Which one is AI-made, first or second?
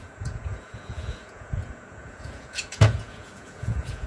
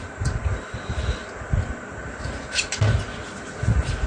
first